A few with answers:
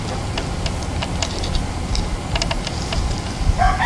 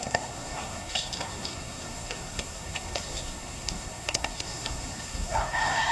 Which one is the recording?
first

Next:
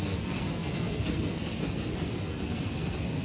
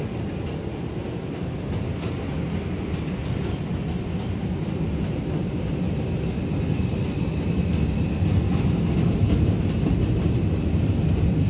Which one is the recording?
second